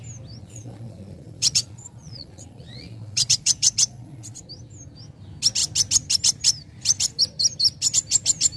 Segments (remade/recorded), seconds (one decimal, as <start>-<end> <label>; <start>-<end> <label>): 0.0-0.4 recorded; 0.4-4.4 remade; 4.4-8.6 recorded